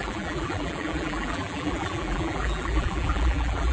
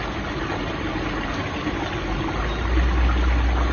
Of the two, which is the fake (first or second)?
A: first